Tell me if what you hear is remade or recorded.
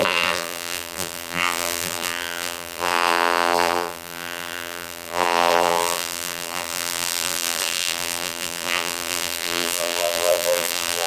remade